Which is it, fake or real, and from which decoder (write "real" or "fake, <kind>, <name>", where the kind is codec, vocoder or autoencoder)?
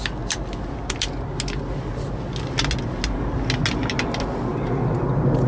real